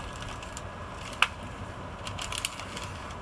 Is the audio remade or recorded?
recorded